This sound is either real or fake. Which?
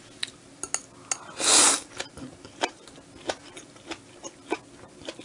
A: real